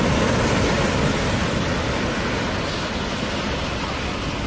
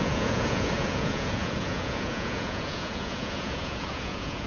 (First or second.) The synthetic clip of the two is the second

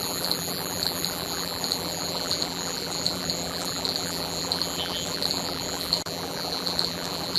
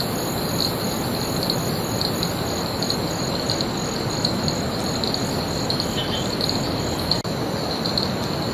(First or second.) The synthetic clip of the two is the first